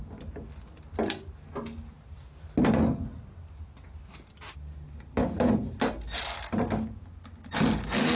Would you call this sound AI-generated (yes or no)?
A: no